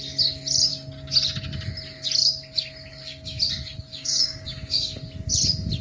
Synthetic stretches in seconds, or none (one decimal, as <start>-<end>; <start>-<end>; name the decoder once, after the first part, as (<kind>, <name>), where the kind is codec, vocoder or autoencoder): 2.9-3.4 (codec, DAC); 3.9-5.0